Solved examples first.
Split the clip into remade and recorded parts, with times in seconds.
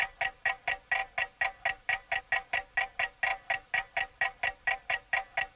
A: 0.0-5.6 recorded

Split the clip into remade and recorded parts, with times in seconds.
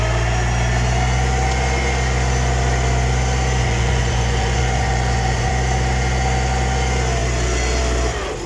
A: 0.0-3.6 recorded; 3.6-5.5 remade; 5.5-8.5 recorded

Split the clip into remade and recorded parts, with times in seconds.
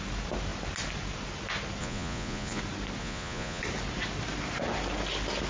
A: 0.0-1.8 recorded; 1.8-2.6 remade; 2.6-3.0 recorded; 3.0-3.6 remade; 3.6-5.5 recorded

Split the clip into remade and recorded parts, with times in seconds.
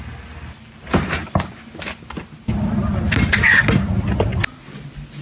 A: 0.0-5.2 recorded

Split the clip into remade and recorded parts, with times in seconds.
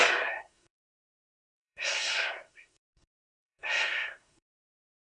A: 0.0-5.2 remade